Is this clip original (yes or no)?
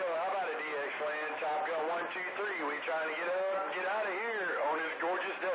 yes